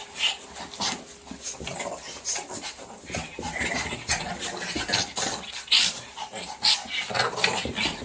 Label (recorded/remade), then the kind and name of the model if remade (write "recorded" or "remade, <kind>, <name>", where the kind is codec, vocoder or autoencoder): recorded